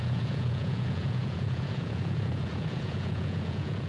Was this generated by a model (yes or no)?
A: yes